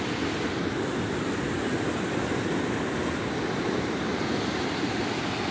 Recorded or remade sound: recorded